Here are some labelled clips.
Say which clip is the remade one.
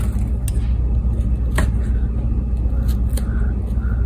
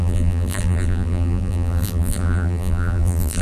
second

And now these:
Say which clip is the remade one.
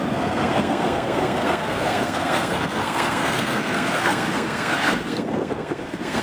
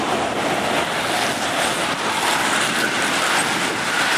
first